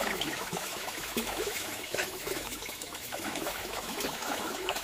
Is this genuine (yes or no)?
no